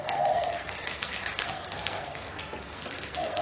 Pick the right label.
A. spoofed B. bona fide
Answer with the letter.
A